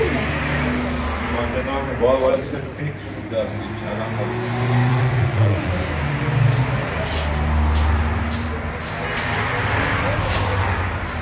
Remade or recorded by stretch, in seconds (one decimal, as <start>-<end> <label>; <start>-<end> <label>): 0.0-2.3 recorded; 2.3-2.8 remade; 2.8-4.9 recorded; 4.9-5.7 remade; 5.7-11.2 recorded